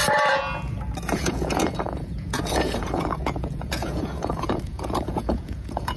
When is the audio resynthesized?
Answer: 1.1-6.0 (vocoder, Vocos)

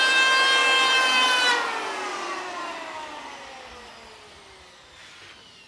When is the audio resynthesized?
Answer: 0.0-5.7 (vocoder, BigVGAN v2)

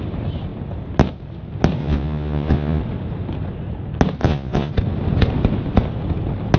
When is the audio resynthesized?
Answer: 1.8-2.8 (vocoder, Vocos); 4.2-4.7

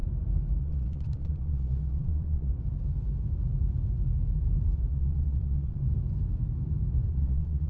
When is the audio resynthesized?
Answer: 0.6-2.5 (vocoder, Vocos); 4.9-5.8; 7.1-7.7

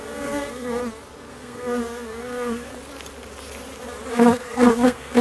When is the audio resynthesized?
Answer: 0.0-0.8 (codec, SNAC); 1.3-2.7; 4.1-5.2

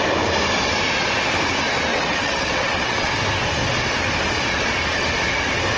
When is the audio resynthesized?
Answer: 1.9-3.1 (vocoder, WaveNeXt)

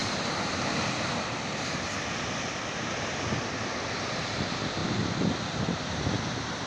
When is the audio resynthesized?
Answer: none

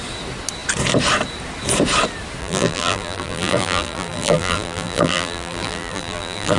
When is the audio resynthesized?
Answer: 2.4-6.6 (vocoder, BigVGAN v2)